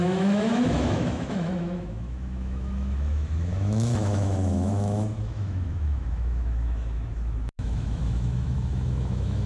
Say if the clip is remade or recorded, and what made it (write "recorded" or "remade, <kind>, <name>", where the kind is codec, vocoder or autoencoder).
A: remade, autoencoder, DAC-VAE